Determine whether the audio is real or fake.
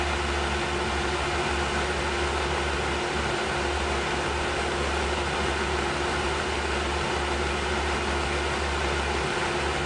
real